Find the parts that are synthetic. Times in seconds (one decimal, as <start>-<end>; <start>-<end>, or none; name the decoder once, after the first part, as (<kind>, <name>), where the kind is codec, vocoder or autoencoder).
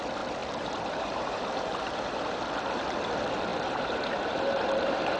0.4-2.4 (vocoder, BigVGAN v2); 3.5-5.2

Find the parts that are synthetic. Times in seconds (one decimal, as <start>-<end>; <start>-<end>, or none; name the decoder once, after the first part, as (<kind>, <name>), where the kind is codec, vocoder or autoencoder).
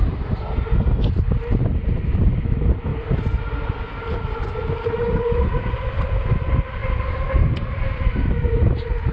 6.8-8.3 (vocoder, BigVGAN v2)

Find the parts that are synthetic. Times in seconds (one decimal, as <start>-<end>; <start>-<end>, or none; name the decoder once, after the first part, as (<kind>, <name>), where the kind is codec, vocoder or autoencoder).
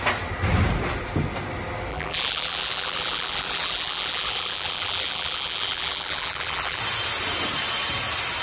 1.9-6.8 (vocoder, BigVGAN v2)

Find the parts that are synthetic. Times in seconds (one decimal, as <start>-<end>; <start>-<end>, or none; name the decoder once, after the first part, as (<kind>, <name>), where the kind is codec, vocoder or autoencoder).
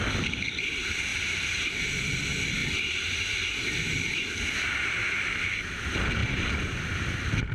1.1-2.2 (vocoder, BigVGAN v2); 6.2-6.9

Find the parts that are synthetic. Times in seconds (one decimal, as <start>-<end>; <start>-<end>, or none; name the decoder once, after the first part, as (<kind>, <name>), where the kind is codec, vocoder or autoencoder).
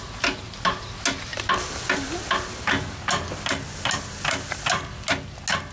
none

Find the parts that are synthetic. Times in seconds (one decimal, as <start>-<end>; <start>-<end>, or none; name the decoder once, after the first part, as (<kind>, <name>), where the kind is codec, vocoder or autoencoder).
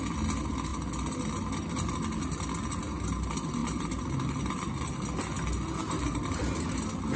3.6-4.5 (vocoder, BigVGAN v2); 5.8-6.4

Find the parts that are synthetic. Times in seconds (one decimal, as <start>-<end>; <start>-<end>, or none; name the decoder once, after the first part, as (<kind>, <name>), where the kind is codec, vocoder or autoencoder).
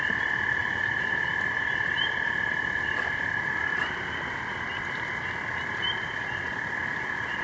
0.6-2.0 (vocoder, BigVGAN v2)